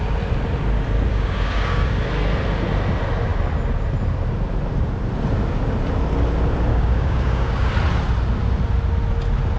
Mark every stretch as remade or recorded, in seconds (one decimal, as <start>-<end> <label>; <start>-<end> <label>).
0.0-1.1 recorded; 1.1-2.0 remade; 2.0-6.7 recorded; 6.7-7.7 remade; 7.7-9.6 recorded